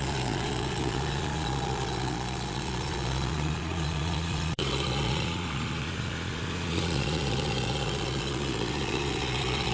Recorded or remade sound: remade